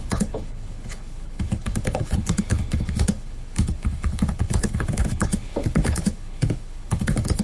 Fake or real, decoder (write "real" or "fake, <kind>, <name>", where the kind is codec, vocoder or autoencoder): fake, codec, HILCodec